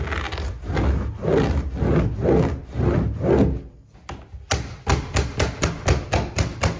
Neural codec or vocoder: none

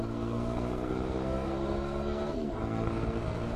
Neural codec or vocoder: codec, SNAC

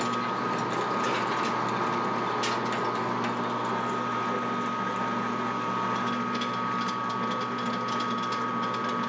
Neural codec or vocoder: none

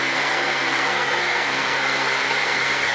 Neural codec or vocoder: codec, SNAC